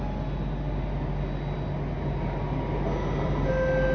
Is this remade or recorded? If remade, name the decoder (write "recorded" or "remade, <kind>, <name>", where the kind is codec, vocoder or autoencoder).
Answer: recorded